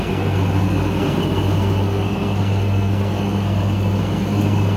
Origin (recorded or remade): remade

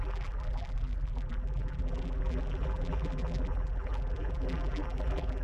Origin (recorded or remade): remade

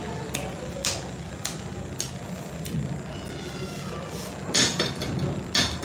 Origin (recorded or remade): recorded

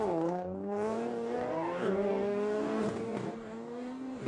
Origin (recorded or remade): remade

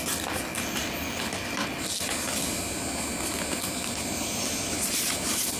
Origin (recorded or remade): recorded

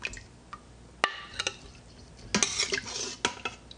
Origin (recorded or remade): recorded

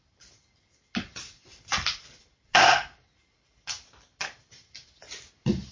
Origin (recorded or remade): recorded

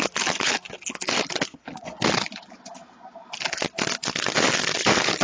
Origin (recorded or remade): recorded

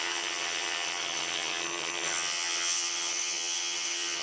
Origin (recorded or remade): remade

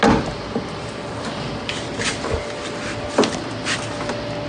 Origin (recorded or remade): recorded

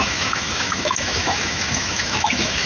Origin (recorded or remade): remade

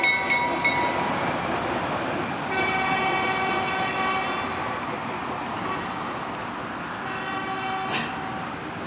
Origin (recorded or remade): recorded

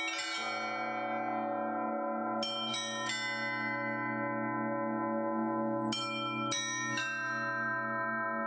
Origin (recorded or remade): recorded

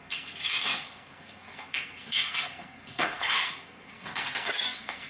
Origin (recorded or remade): remade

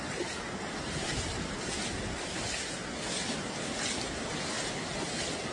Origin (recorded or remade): recorded